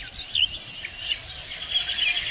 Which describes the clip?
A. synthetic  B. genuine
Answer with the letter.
B